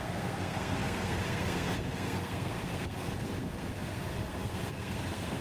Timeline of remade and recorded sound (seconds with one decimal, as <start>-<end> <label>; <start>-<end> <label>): 0.0-5.4 remade